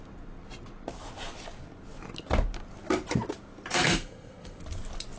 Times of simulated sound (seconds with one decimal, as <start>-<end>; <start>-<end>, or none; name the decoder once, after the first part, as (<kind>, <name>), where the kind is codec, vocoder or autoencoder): 3.7-4.6 (codec, SNAC)